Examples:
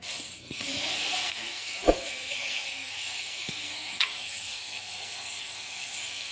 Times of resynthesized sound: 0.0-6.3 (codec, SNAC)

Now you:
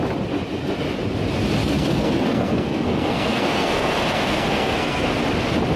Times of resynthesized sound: 1.6-5.1 (codec, SNAC)

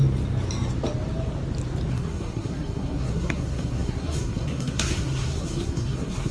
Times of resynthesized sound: 1.9-6.3 (codec, SNAC)

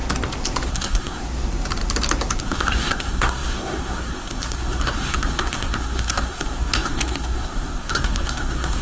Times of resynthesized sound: 0.7-1.2 (codec, SNAC); 2.4-8.8

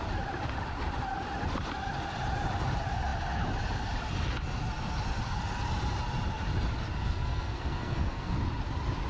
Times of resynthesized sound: 6.9-8.4 (codec, SNAC)

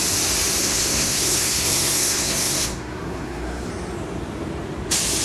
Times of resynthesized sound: 0.6-3.7 (codec, SNAC)